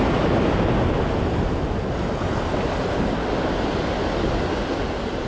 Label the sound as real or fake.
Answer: real